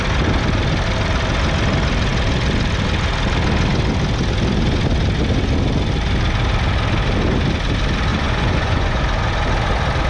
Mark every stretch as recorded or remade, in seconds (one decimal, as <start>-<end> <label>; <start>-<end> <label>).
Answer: 0.0-8.1 recorded; 8.1-9.0 remade; 9.0-10.1 recorded